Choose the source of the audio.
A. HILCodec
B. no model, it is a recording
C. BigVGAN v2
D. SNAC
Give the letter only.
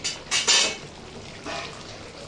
B